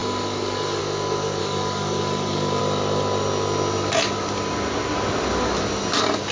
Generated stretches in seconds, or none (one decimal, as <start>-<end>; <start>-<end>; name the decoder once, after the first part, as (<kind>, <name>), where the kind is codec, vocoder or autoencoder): 0.0-0.8 (codec, DAC); 1.4-2.6